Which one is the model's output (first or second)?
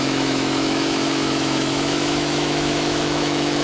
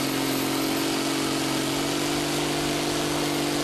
first